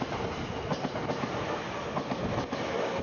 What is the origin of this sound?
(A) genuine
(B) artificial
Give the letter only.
A